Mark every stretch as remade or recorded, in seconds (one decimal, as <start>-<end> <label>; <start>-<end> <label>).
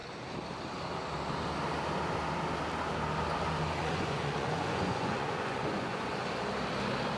0.0-3.8 recorded; 3.8-6.3 remade; 6.3-7.2 recorded